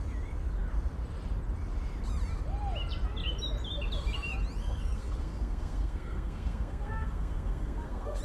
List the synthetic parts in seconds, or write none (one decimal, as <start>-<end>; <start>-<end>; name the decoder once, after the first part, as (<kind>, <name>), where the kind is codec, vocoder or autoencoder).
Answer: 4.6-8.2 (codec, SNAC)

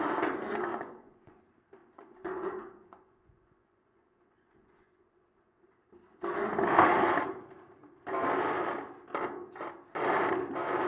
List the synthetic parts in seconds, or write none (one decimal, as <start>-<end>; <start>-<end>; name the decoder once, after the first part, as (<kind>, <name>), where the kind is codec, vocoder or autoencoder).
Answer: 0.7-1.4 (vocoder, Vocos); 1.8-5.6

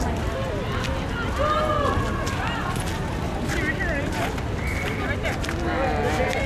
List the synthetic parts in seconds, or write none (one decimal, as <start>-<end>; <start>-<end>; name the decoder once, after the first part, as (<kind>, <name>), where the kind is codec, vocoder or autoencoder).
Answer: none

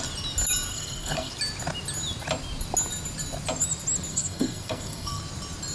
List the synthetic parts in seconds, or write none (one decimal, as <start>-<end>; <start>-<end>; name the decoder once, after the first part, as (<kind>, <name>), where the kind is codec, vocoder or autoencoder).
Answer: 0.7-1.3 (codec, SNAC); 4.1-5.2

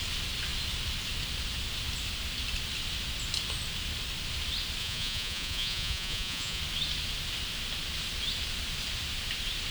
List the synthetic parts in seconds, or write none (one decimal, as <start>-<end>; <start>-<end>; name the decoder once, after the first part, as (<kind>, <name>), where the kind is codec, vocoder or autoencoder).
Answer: 4.8-6.6 (vocoder, Vocos)

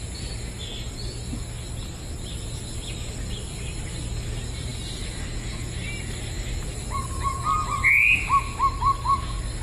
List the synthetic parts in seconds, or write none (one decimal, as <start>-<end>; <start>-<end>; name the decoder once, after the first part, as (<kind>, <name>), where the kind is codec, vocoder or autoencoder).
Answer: none